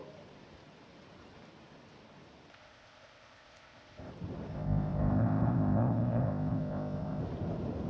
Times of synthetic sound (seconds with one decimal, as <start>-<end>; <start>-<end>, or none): 2.5-4.1; 4.5-7.2